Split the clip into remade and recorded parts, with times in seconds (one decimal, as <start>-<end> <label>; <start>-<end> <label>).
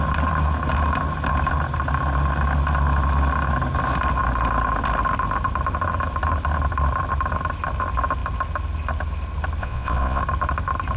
0.0-9.6 recorded; 9.6-10.2 remade; 10.2-11.0 recorded